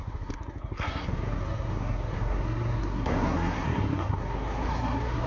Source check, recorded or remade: remade